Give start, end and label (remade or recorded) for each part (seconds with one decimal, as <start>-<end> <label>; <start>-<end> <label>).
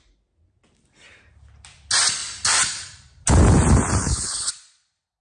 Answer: 0.0-4.0 recorded; 4.0-4.5 remade; 4.5-5.2 recorded